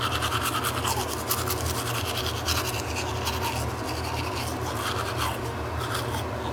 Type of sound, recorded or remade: recorded